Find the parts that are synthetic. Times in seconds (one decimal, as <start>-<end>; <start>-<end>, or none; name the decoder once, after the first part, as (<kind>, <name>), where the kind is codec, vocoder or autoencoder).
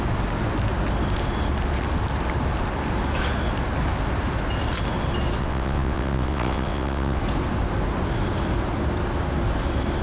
5.4-7.2 (vocoder, WaveNeXt)